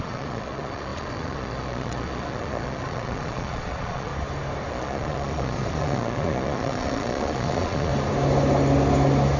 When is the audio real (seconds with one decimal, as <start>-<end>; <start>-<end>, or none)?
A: 4.1-4.7; 7.9-9.4